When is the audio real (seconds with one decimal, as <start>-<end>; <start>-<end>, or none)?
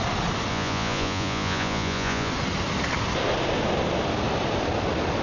0.0-0.5; 2.3-5.2